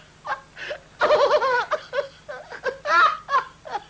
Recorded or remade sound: recorded